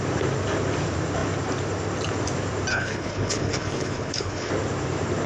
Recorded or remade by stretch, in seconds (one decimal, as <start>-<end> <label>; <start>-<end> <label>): 0.0-2.7 recorded; 2.7-4.5 remade; 4.5-5.3 recorded